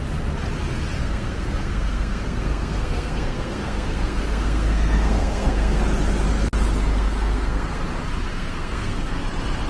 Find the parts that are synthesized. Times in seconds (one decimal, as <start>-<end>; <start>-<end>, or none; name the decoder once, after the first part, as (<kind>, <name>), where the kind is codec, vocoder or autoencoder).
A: 1.0-5.8 (codec, SNAC); 6.9-7.8; 8.3-9.1